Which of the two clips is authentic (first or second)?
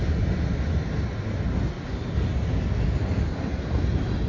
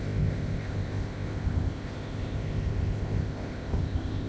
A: first